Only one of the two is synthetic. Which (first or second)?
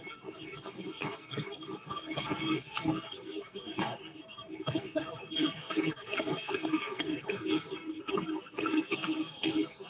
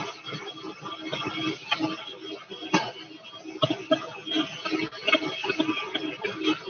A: first